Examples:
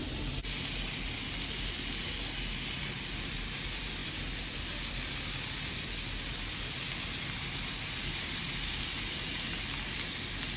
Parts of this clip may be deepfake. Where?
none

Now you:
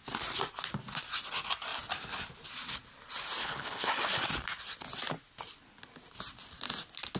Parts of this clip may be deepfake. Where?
3.4-3.9

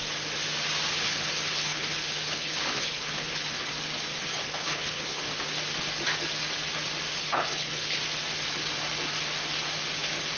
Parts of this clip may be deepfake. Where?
0.9-3.7; 4.2-5.2; 7.2-8.0

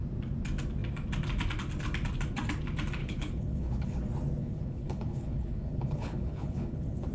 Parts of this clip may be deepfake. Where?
3.0-4.0; 4.4-7.1

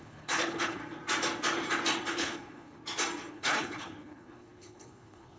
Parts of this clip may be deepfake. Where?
0.0-0.8; 2.1-2.8; 3.3-5.4

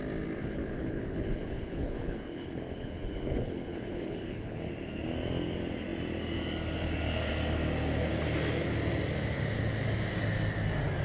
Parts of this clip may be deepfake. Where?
0.4-4.7

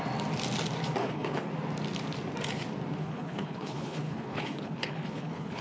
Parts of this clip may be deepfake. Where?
1.0-1.5; 3.0-5.6

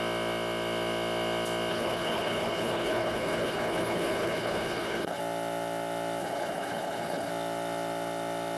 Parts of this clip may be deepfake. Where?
1.7-5.2; 6.2-7.3